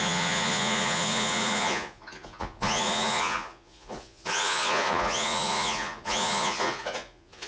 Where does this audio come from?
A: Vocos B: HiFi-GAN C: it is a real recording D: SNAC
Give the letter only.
A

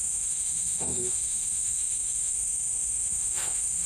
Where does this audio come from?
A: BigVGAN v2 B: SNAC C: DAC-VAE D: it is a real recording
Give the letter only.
C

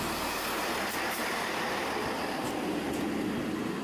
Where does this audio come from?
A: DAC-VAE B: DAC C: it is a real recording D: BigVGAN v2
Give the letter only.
C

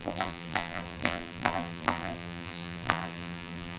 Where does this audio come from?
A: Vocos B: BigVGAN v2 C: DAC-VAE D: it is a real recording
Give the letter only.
B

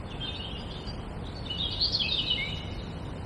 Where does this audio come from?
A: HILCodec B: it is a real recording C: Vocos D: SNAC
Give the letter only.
B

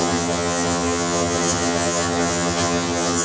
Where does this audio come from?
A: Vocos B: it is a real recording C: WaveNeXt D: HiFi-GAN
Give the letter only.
D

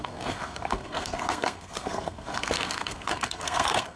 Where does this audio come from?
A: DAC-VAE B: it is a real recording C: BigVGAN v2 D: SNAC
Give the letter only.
D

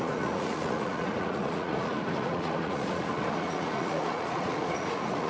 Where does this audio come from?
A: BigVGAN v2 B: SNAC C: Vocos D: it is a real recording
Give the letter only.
C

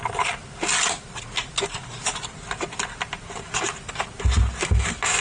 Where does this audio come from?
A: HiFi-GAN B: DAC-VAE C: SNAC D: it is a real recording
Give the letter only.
D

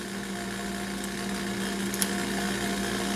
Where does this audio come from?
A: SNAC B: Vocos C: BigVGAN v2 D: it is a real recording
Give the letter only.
D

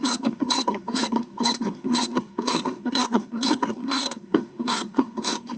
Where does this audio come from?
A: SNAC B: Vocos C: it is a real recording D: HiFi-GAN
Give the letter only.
A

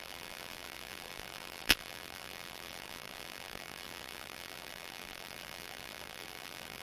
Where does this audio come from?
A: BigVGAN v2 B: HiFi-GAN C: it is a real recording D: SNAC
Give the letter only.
A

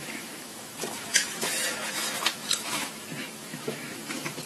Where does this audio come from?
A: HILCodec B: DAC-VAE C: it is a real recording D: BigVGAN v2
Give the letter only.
B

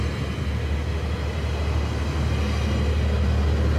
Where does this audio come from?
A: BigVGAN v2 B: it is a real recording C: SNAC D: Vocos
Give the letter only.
B